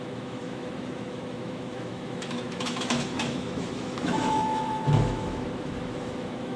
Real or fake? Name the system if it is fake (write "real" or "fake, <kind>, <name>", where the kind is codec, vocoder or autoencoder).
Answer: fake, autoencoder, DAC-VAE